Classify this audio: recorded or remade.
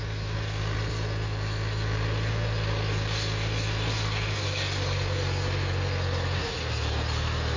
recorded